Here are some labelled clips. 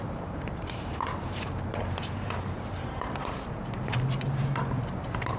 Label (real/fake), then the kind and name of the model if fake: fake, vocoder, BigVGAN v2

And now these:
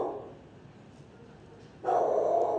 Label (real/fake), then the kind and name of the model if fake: real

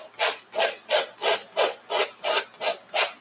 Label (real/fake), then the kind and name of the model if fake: real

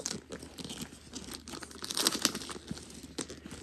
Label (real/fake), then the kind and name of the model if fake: real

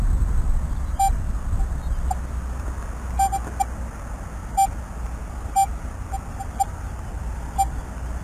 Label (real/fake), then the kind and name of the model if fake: real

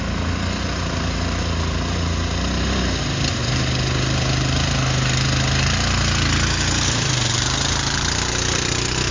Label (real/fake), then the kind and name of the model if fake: real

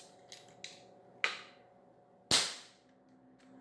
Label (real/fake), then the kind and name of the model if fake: real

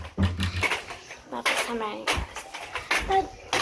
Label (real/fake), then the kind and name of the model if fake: real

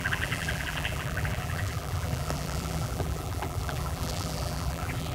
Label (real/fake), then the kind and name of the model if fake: fake, vocoder, BigVGAN v2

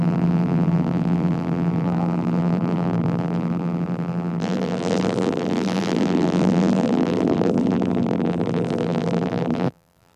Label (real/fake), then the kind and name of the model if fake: fake, vocoder, BigVGAN v2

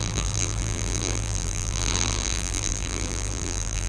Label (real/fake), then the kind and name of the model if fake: fake, vocoder, BigVGAN v2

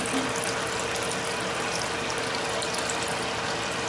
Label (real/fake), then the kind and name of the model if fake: real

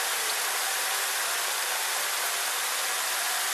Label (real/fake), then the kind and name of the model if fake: real